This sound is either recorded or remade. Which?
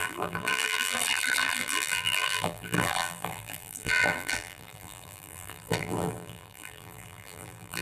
remade